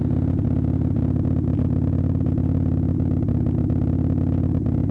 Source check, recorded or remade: recorded